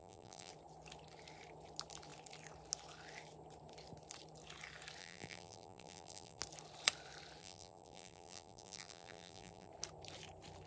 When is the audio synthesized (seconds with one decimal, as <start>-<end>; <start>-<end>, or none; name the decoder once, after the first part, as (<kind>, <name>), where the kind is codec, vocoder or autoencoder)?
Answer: 0.0-0.5 (vocoder, BigVGAN v2); 5.0-6.4; 7.4-9.7